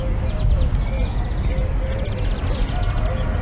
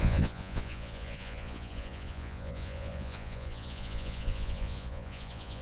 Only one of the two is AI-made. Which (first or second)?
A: second